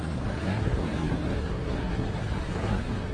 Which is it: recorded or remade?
remade